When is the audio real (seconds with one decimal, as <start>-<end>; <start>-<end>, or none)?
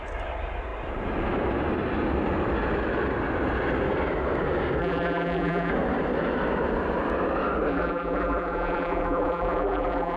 0.0-4.8; 5.7-7.7